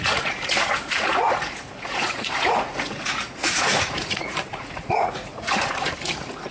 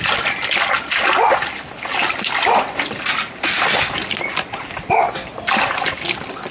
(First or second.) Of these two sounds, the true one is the second